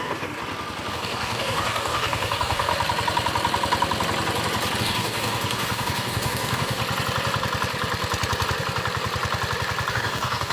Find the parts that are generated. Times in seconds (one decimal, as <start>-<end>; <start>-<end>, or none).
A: 0.0-0.4; 0.9-2.7; 4.8-6.8; 9.9-10.5